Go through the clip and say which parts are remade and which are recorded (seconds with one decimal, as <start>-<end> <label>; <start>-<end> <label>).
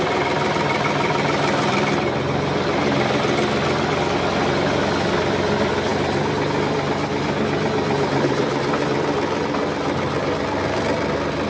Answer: 0.0-1.9 remade; 1.9-4.5 recorded; 4.5-11.5 remade